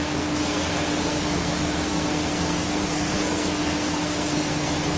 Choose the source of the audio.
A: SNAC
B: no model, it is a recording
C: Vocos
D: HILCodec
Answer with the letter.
A